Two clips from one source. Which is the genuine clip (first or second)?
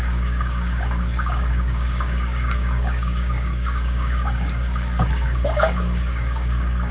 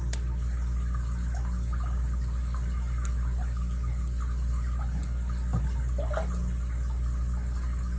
second